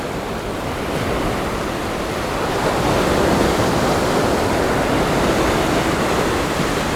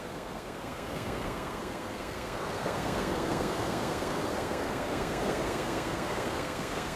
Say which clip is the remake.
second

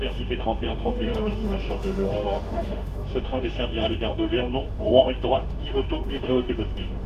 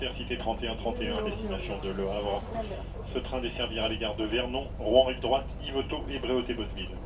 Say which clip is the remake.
first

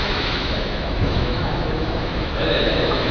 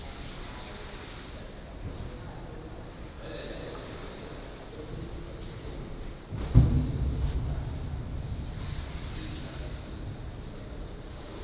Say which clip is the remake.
first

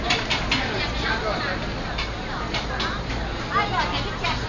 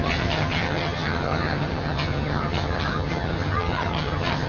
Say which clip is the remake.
second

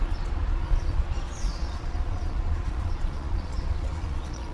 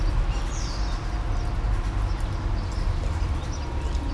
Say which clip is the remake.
first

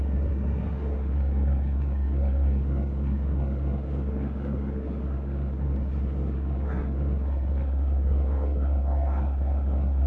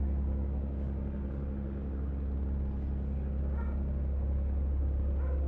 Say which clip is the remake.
first